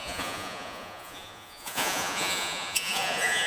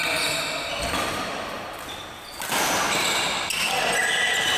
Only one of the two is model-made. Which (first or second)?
first